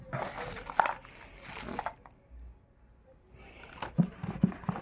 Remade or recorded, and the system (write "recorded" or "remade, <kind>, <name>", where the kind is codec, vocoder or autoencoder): recorded